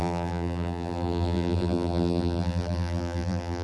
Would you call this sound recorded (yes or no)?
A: no